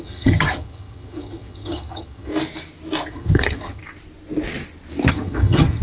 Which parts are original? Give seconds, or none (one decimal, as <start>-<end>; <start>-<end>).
2.3-3.1; 3.8-5.1